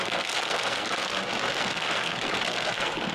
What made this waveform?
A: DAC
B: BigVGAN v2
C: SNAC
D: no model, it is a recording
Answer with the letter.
C